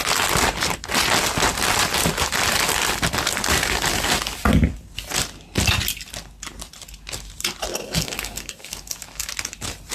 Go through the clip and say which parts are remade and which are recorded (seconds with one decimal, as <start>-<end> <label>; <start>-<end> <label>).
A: 0.0-7.7 recorded; 7.7-9.3 remade; 9.3-9.9 recorded